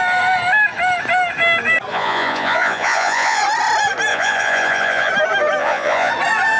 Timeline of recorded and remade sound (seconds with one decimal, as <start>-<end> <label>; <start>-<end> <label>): 0.0-1.9 recorded; 1.9-3.4 remade; 3.4-4.1 recorded; 4.1-5.1 remade; 5.1-5.6 recorded; 5.6-6.1 remade; 6.1-6.6 recorded